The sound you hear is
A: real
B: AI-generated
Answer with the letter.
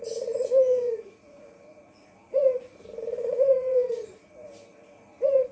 B